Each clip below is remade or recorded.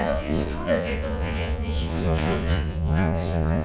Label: remade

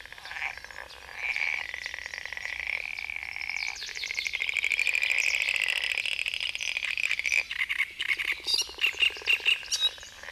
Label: recorded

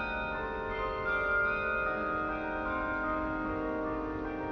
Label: recorded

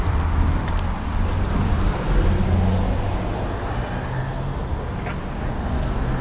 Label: recorded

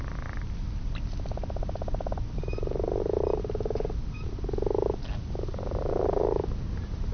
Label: recorded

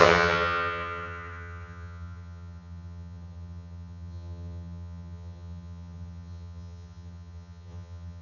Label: remade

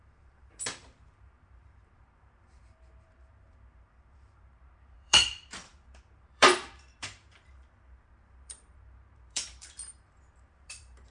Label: remade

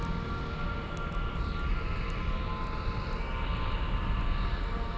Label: recorded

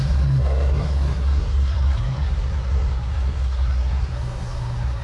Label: remade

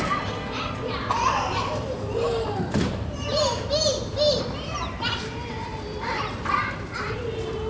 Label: remade